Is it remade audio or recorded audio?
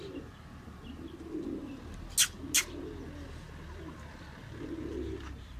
recorded